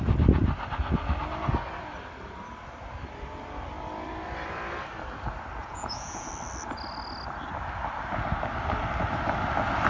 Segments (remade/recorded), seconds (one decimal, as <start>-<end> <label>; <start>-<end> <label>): 0.0-5.6 recorded; 5.6-6.3 remade; 6.3-9.9 recorded